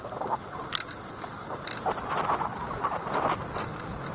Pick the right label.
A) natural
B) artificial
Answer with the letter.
A